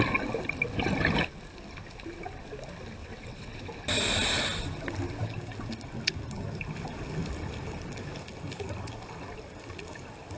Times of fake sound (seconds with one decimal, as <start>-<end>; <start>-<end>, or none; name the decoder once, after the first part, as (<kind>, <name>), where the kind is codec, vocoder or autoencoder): 3.0-3.6 (vocoder, WaveNeXt)